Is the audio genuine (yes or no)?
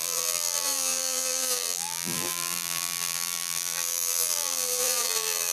no